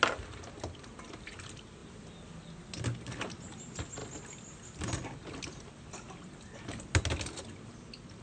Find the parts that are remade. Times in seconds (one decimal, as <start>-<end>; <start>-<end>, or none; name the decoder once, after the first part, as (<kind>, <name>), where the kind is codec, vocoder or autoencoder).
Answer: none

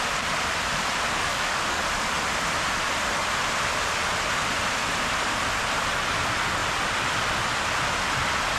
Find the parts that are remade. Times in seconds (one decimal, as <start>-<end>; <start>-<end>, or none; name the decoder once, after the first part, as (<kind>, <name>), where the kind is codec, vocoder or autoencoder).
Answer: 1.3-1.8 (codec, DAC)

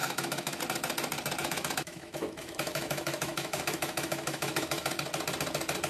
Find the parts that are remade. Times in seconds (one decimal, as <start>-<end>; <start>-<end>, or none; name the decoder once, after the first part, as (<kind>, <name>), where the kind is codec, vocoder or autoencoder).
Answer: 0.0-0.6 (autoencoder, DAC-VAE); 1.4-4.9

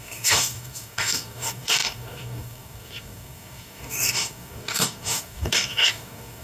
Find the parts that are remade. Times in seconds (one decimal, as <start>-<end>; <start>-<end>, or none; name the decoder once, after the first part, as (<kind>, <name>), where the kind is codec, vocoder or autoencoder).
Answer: 0.0-6.4 (codec, DAC)

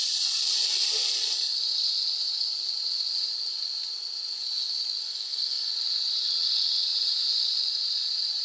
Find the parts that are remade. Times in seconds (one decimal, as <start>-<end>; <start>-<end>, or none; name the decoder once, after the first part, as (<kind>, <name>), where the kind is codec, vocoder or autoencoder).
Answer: 5.0-5.7 (codec, SNAC)

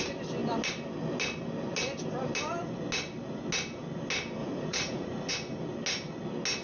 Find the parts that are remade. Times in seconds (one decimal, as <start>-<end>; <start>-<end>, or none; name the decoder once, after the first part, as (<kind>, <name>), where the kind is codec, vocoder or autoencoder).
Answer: 4.4-5.3 (vocoder, Vocos)

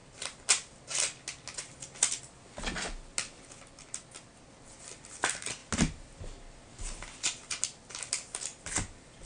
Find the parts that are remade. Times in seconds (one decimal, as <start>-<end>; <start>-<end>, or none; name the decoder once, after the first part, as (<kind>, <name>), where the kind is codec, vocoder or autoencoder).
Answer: none

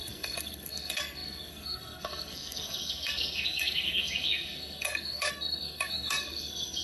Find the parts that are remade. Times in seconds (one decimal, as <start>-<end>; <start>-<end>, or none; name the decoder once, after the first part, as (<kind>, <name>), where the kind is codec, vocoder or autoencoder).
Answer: 0.0-6.8 (codec, SNAC)